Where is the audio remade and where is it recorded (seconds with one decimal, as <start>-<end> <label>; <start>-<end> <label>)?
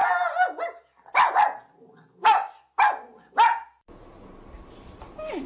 0.0-5.5 recorded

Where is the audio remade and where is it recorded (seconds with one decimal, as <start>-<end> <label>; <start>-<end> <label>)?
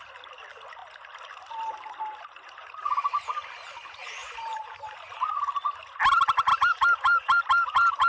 0.0-4.2 recorded; 4.2-4.8 remade; 4.8-6.5 recorded; 6.5-7.4 remade; 7.4-8.1 recorded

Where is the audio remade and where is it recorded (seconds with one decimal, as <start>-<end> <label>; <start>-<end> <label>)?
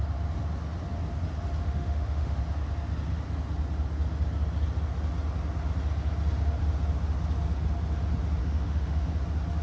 0.0-1.6 recorded; 1.6-2.4 remade; 2.4-8.4 recorded; 8.4-9.1 remade; 9.1-9.6 recorded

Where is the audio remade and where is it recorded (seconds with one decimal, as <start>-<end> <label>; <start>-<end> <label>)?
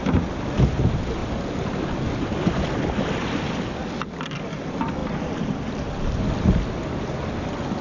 0.0-7.8 recorded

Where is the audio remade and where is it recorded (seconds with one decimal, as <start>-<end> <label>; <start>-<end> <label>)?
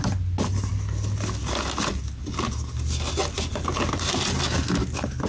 0.0-5.3 recorded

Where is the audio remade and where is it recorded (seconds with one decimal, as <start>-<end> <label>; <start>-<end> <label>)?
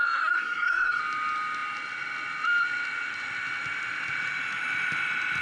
0.0-1.0 remade; 1.0-5.4 recorded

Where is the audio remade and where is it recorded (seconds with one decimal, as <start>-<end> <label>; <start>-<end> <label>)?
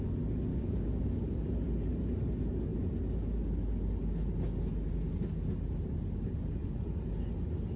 0.0-0.5 recorded; 0.5-1.5 remade; 1.5-7.8 recorded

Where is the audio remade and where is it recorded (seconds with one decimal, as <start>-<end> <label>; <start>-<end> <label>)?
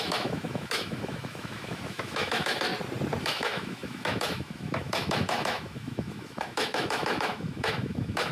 0.0-2.7 remade; 2.7-3.2 recorded; 3.2-8.3 remade